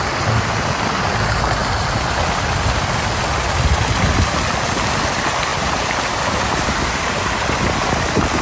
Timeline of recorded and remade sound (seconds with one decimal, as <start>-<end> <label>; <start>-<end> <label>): 0.0-5.5 recorded; 5.5-7.5 remade; 7.5-8.4 recorded